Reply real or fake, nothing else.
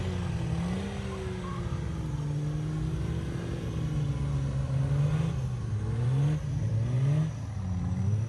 real